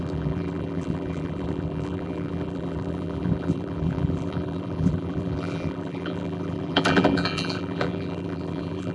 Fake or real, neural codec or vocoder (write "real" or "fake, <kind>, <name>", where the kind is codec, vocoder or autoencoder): fake, vocoder, BigVGAN v2